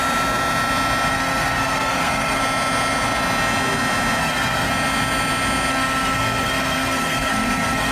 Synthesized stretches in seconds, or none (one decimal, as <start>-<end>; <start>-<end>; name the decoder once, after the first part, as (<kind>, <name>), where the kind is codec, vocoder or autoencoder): 1.1-2.4 (codec, SNAC); 4.2-4.7; 5.7-7.9